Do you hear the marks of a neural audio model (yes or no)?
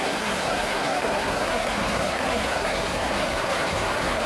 yes